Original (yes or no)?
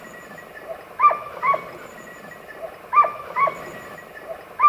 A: yes